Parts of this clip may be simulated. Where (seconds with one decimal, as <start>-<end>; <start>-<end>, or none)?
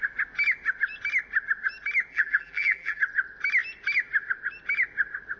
2.1-3.0